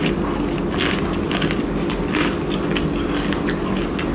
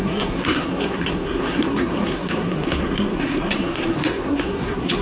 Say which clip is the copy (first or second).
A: second